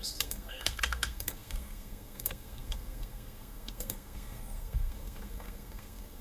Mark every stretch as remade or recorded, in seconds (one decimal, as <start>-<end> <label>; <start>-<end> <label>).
0.0-6.2 remade